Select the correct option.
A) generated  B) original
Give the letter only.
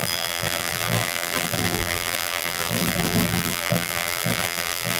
A